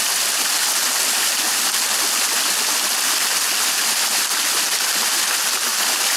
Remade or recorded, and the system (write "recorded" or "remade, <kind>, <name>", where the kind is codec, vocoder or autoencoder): recorded